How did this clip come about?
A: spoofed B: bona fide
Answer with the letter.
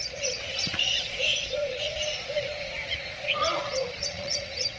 A